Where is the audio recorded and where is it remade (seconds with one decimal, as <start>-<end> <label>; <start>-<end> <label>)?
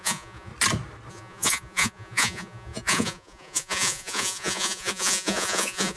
0.0-0.5 remade; 0.5-1.1 recorded; 1.1-6.0 remade